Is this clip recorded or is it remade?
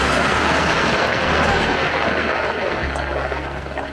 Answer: remade